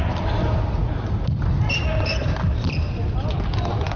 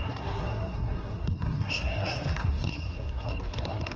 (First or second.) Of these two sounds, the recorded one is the first